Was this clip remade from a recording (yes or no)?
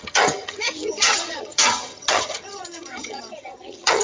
yes